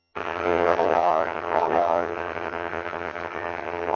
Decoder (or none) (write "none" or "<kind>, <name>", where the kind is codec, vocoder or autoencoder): vocoder, HiFi-GAN